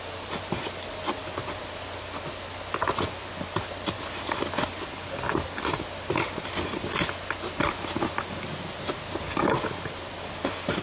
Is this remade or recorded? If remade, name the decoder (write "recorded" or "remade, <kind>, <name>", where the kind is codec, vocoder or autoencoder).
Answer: recorded